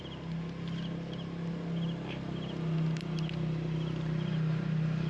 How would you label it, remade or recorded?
recorded